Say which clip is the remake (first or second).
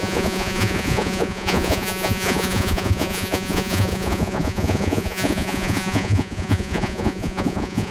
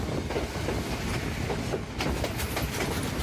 first